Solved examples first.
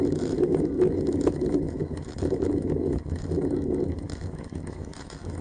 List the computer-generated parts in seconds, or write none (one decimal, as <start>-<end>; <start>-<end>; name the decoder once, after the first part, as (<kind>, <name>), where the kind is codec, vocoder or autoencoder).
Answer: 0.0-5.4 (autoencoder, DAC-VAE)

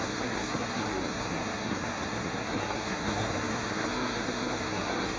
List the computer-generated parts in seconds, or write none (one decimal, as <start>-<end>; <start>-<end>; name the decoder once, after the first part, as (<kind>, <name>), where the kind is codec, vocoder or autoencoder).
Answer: 0.0-5.2 (codec, SNAC)

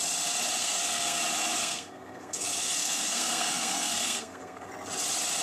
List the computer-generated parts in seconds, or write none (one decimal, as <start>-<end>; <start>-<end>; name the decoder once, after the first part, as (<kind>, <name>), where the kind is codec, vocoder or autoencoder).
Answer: 0.6-1.2 (codec, SNAC); 1.6-4.7